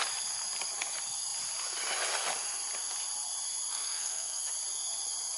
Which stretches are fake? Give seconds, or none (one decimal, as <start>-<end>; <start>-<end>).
3.7-4.4